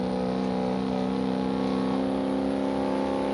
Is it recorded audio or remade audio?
recorded